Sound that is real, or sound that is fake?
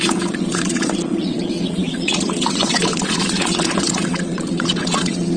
fake